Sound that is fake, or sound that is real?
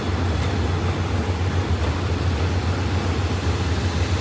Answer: real